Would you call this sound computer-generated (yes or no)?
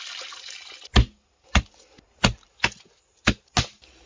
no